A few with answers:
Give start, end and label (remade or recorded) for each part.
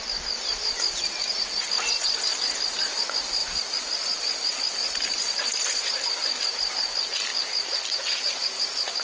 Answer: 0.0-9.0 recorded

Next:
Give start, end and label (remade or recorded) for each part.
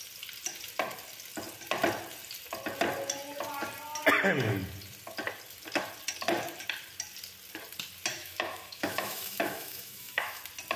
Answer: 0.0-8.1 recorded; 8.1-10.4 remade; 10.4-10.8 recorded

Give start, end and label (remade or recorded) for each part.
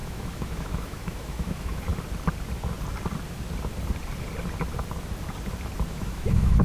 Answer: 0.0-1.9 remade; 1.9-5.9 recorded; 5.9-6.6 remade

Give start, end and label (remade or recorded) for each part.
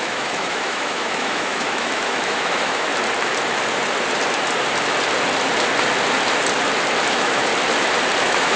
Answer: 0.0-2.9 remade; 2.9-7.1 recorded; 7.1-7.5 remade; 7.5-8.2 recorded; 8.2-8.6 remade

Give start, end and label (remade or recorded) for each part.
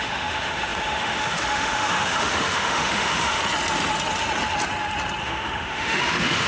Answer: 0.0-3.4 remade; 3.4-5.2 recorded; 5.2-6.5 remade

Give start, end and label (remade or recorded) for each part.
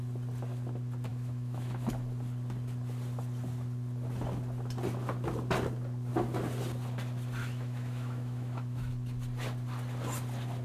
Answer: 0.0-1.1 recorded; 1.1-1.9 remade; 1.9-7.4 recorded; 7.4-8.9 remade; 8.9-10.6 recorded